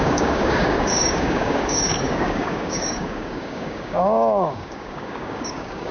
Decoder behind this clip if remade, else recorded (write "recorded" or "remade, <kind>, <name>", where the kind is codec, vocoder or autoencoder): remade, codec, DAC